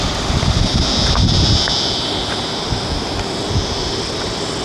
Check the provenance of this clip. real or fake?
real